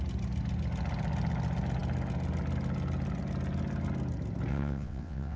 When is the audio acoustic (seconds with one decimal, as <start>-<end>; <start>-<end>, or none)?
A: 0.0-4.5